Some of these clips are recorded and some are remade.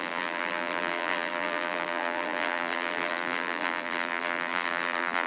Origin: remade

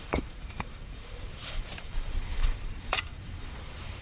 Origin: remade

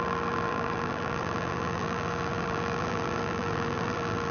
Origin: remade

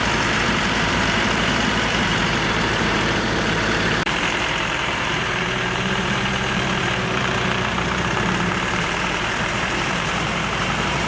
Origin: remade